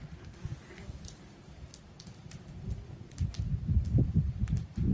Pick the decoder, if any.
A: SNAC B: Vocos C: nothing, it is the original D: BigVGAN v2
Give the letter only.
C